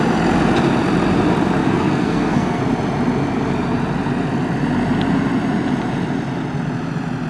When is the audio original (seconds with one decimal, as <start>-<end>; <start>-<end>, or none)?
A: 0.0-1.6; 2.6-7.3